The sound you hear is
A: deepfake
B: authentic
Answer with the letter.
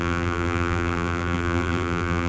A